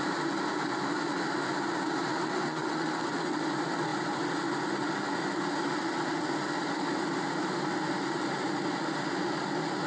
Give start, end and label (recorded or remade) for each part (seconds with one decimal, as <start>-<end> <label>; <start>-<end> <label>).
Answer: 0.0-2.1 recorded; 2.1-3.4 remade; 3.4-9.9 recorded